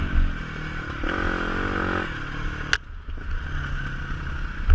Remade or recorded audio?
recorded